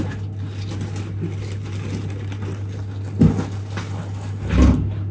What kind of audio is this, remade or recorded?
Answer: recorded